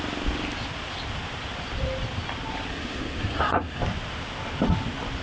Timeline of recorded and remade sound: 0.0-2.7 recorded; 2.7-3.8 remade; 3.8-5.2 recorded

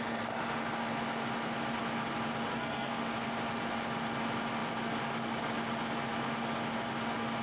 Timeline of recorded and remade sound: 0.0-2.5 recorded; 2.5-3.0 remade; 3.0-7.4 recorded

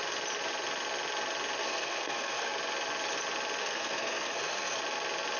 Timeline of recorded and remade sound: 0.0-1.6 recorded; 1.6-2.5 remade; 2.5-3.6 recorded; 3.6-4.8 remade; 4.8-5.4 recorded

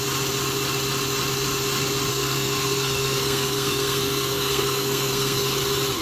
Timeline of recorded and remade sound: 0.0-2.1 recorded; 2.1-5.6 remade; 5.6-6.0 recorded

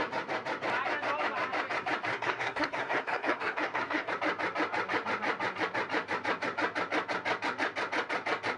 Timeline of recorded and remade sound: 0.0-2.1 recorded; 2.1-4.1 remade; 4.1-8.6 recorded